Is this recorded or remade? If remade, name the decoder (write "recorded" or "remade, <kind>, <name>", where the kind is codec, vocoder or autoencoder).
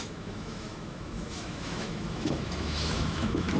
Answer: remade, autoencoder, DAC-VAE